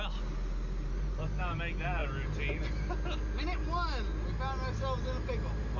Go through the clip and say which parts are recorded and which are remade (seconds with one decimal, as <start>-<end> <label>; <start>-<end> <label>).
0.0-5.8 recorded